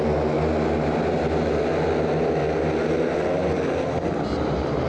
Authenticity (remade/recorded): recorded